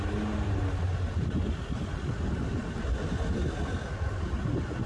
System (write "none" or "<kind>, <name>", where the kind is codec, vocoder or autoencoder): none